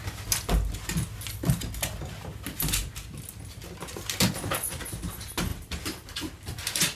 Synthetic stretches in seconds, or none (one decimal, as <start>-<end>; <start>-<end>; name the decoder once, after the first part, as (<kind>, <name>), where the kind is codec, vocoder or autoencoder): none